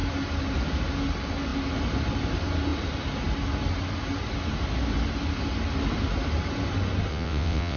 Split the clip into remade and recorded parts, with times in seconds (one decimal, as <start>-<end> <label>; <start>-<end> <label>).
0.0-7.1 recorded; 7.1-7.8 remade